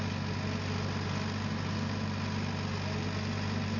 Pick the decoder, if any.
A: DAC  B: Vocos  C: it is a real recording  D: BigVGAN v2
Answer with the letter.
C